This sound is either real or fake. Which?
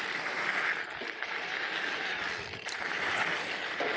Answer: real